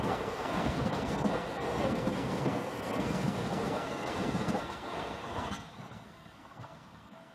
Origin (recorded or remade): remade